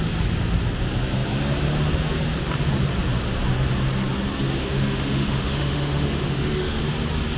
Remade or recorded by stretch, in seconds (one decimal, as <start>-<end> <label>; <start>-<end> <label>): 0.0-4.6 recorded; 4.6-6.8 remade; 6.8-7.4 recorded